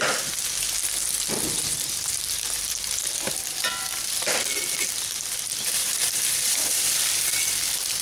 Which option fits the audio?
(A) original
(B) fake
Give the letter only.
B